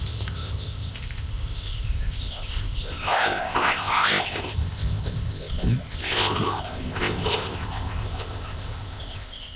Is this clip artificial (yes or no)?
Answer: yes